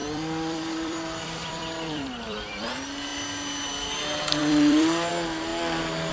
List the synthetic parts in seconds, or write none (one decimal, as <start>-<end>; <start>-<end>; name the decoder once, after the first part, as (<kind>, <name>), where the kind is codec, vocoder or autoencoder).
0.0-2.7 (vocoder, BigVGAN v2); 4.4-5.1